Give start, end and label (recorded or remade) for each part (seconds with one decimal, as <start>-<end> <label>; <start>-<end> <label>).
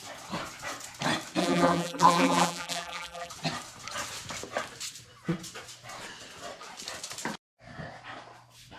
0.0-1.4 recorded; 1.4-3.3 remade; 3.3-8.8 recorded